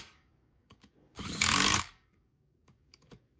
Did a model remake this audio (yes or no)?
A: yes